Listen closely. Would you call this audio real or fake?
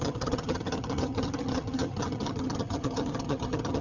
fake